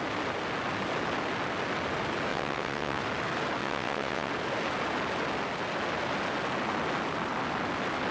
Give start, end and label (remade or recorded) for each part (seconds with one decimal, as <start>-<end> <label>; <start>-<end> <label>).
0.0-2.3 recorded; 2.3-3.0 remade; 3.0-3.6 recorded; 3.6-4.3 remade; 4.3-8.1 recorded